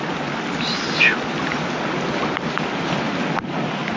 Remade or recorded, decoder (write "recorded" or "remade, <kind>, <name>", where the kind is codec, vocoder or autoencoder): recorded